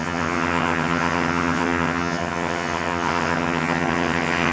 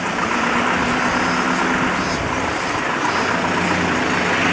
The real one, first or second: second